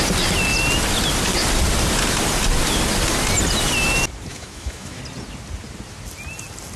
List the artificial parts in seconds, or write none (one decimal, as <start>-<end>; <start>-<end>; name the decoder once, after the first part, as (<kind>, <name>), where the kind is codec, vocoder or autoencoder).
4.3-5.0 (autoencoder, DAC-VAE)